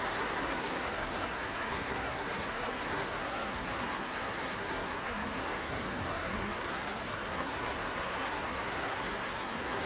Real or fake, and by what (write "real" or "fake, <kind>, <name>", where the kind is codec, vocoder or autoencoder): fake, codec, SNAC